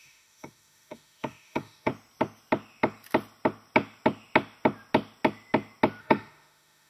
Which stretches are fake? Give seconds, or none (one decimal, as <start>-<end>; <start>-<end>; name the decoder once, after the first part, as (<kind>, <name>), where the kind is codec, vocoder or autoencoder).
0.0-1.9 (autoencoder, DAC-VAE); 6.0-6.9